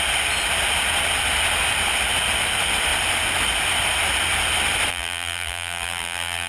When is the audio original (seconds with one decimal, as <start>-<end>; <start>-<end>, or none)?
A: 0.0-4.9